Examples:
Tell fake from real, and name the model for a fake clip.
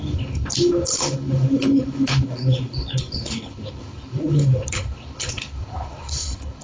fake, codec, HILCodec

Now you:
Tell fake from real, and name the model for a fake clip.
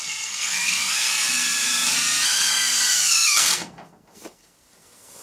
fake, codec, SNAC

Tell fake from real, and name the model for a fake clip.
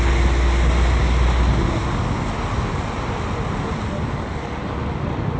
real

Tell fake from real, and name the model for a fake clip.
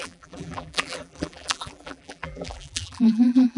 fake, vocoder, BigVGAN v2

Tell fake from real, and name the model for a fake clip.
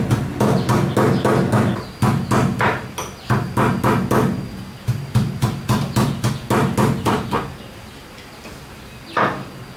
real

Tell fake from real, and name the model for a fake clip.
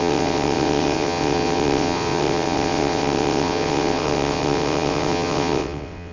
fake, vocoder, WaveNeXt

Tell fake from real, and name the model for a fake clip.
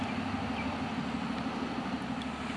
real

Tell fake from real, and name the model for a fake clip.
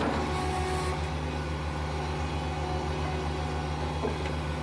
real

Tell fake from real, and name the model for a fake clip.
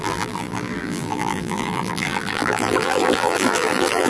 fake, vocoder, BigVGAN v2